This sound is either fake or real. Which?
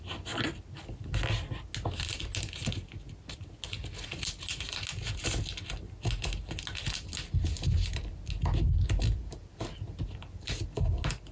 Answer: real